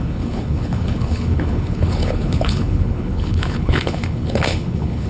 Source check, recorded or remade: remade